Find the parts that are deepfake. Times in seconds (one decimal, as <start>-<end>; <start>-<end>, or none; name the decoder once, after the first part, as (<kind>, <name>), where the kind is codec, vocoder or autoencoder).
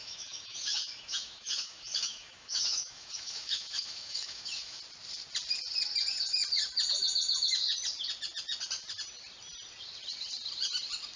0.0-4.8 (autoencoder, DAC-VAE)